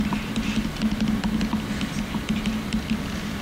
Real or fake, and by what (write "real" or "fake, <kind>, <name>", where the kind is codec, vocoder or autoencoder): real